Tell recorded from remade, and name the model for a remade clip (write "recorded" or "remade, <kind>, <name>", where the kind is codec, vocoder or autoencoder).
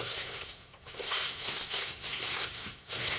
remade, codec, SNAC